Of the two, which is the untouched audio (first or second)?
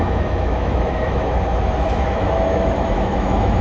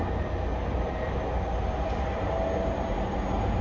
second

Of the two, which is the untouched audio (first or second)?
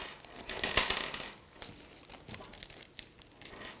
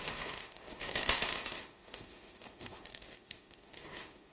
first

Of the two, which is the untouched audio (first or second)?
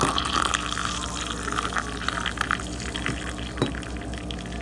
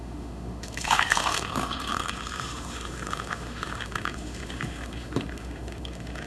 first